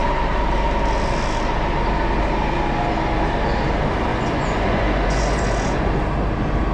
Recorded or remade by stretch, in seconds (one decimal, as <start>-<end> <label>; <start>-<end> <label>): 0.0-4.1 recorded; 4.1-5.9 remade; 5.9-6.7 recorded